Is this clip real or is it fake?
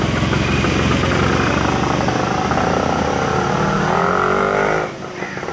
real